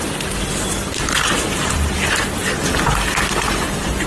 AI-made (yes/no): no